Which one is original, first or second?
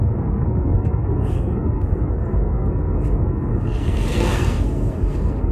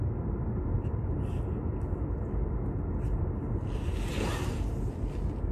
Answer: second